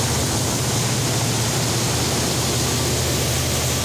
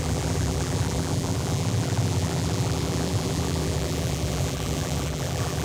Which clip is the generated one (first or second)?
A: second